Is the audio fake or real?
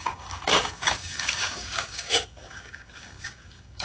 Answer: fake